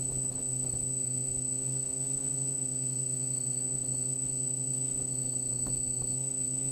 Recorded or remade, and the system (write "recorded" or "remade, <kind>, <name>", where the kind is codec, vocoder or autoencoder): remade, autoencoder, DAC-VAE